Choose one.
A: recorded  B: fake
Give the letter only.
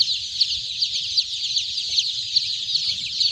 A